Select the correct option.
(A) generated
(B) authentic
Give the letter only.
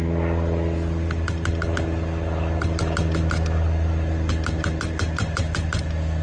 B